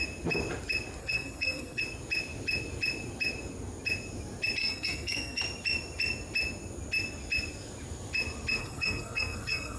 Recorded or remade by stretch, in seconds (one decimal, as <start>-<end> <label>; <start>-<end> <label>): 0.0-1.0 recorded; 1.0-1.8 remade; 1.8-4.6 recorded; 4.6-5.4 remade; 5.4-8.6 recorded; 8.6-9.8 remade